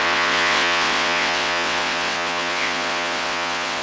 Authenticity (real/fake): fake